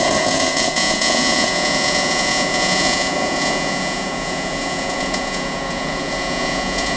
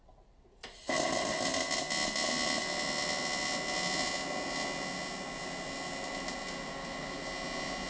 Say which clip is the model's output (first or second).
first